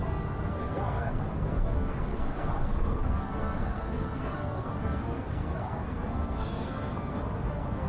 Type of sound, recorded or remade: remade